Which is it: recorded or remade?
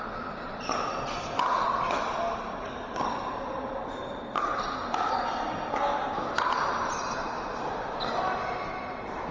recorded